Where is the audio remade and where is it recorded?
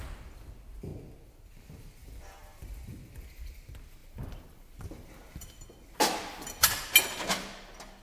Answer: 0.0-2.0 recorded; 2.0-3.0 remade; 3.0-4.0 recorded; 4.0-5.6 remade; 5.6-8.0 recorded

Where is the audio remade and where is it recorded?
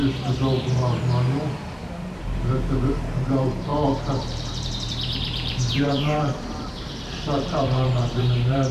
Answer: 0.0-2.2 recorded; 2.2-3.7 remade; 3.7-4.2 recorded; 4.2-8.7 remade